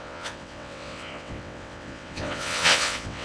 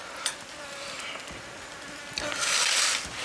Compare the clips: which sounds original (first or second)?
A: second